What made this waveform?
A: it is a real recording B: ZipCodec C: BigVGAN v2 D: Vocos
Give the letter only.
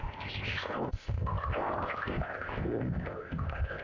B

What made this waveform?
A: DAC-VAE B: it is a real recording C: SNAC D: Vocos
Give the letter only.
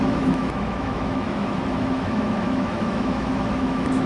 A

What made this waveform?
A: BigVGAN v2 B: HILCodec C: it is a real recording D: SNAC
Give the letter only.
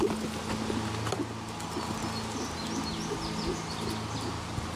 C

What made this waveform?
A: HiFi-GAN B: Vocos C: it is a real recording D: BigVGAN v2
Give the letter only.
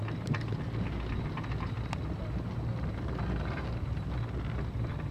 C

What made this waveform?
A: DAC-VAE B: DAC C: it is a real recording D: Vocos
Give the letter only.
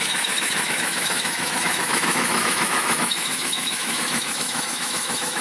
A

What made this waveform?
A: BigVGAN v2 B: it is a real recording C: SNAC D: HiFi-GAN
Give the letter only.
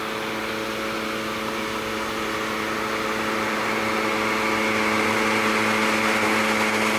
B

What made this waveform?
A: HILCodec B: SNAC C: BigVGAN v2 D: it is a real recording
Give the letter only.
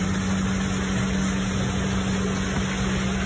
D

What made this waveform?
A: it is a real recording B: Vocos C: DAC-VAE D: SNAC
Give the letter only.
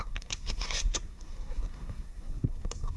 D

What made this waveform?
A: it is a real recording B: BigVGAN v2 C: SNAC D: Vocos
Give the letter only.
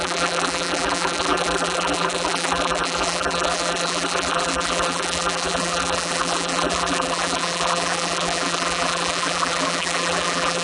B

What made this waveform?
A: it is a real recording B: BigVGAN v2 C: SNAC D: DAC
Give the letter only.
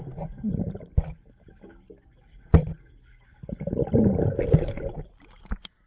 A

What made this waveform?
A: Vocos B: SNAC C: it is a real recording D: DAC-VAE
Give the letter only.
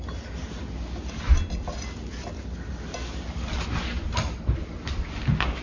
C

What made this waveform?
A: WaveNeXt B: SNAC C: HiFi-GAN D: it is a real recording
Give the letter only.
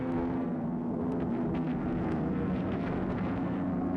B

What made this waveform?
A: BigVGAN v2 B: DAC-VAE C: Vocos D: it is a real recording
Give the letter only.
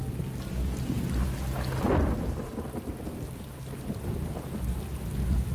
D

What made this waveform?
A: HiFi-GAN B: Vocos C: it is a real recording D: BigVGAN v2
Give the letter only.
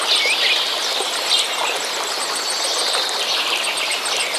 C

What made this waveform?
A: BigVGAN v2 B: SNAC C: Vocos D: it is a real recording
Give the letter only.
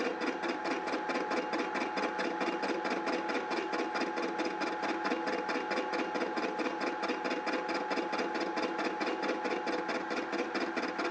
D